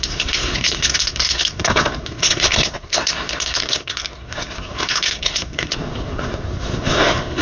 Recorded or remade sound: remade